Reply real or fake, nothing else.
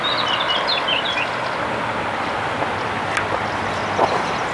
fake